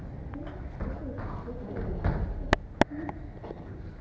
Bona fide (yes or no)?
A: yes